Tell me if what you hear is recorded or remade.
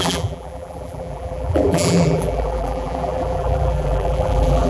remade